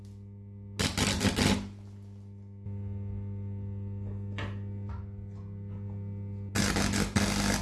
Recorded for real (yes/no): yes